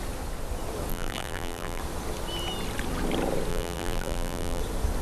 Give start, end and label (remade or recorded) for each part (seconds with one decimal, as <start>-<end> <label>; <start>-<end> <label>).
0.0-0.9 recorded; 0.9-1.8 remade; 1.8-3.5 recorded; 3.5-4.6 remade; 4.6-5.0 recorded

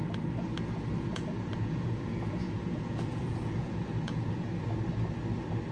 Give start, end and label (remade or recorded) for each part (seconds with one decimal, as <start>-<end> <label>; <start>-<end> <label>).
0.0-1.1 recorded; 1.1-4.5 remade; 4.5-5.7 recorded

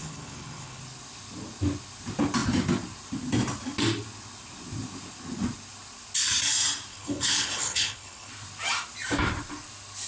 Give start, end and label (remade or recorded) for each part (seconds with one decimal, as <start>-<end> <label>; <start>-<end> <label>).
0.0-0.8 remade; 0.8-6.9 recorded; 6.9-8.3 remade; 8.3-10.1 recorded

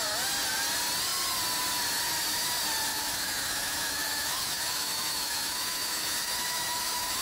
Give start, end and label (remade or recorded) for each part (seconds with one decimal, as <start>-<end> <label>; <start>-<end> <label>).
0.0-2.9 recorded; 2.9-7.2 remade

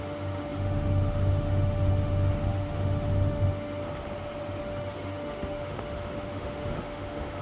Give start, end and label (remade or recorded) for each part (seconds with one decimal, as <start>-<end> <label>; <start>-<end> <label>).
0.0-3.8 remade; 3.8-4.6 recorded; 4.6-7.4 remade

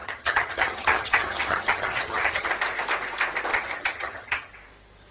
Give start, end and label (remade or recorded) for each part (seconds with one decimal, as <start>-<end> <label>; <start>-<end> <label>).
0.0-2.5 remade; 2.5-3.5 recorded; 3.5-4.5 remade; 4.5-5.1 recorded

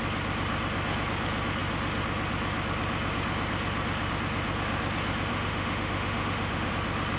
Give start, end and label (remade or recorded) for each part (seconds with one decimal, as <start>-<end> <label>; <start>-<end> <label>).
0.0-5.3 recorded; 5.3-6.7 remade; 6.7-7.2 recorded